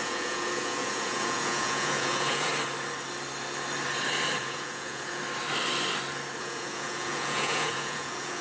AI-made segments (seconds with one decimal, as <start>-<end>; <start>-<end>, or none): 0.0-2.5; 4.4-5.2; 6.4-8.4